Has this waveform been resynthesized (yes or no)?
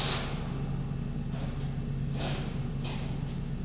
no